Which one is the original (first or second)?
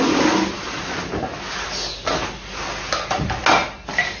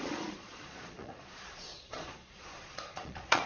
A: first